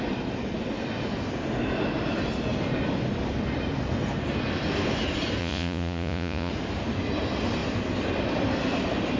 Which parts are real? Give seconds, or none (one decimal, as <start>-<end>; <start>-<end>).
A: 0.0-5.4; 6.5-9.2